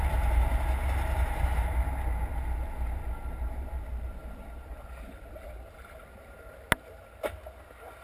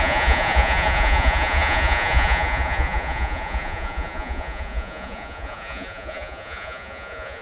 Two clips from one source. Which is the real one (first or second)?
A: first